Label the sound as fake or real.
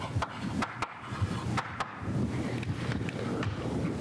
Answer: real